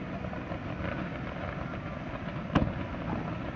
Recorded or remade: recorded